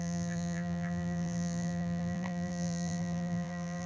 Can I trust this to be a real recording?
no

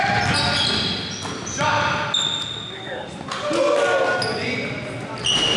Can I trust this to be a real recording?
yes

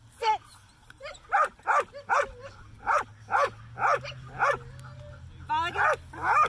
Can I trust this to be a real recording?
yes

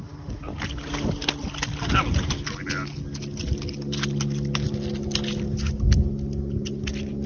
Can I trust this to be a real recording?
yes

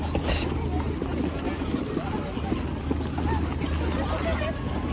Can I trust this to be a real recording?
yes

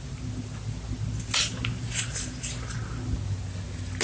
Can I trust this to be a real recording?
yes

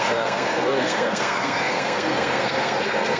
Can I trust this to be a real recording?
no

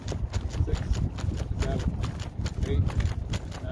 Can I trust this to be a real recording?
yes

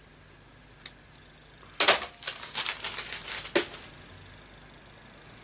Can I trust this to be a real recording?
yes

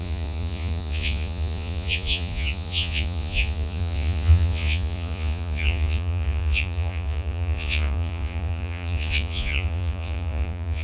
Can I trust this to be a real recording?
no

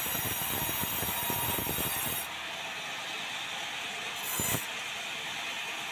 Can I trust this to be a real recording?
yes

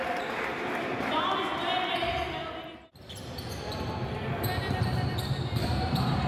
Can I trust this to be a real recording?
yes